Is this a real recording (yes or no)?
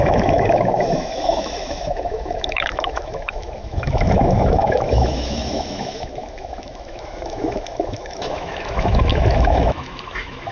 no